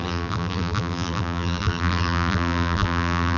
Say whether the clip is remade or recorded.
remade